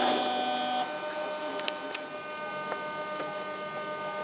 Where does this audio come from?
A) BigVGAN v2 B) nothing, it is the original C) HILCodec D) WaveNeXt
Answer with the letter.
B